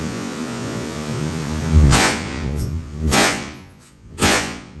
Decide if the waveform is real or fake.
fake